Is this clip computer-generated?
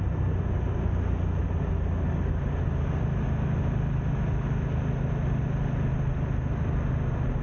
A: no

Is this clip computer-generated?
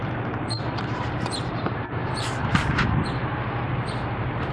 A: yes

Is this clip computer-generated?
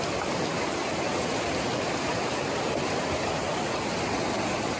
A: no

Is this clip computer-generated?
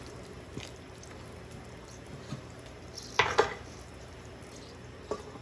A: no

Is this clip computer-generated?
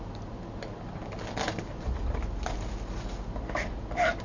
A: no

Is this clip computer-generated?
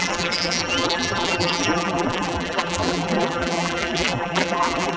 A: yes